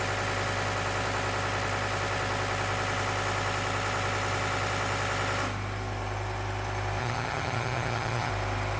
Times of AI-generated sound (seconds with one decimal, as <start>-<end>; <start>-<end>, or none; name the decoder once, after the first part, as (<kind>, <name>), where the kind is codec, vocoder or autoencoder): 7.0-8.3 (vocoder, HiFi-GAN)